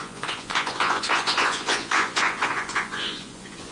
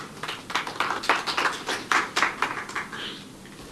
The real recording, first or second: second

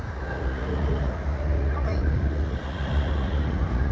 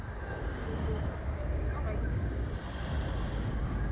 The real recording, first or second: second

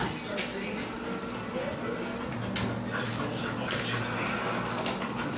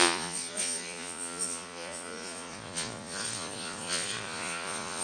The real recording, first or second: first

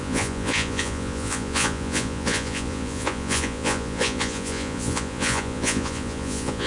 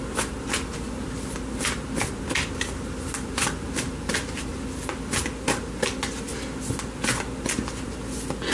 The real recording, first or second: second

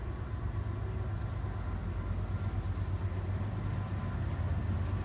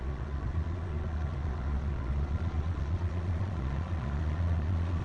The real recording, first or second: first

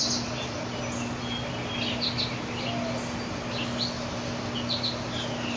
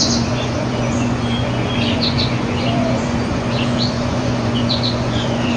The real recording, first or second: first